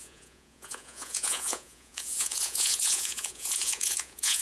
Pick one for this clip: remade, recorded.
remade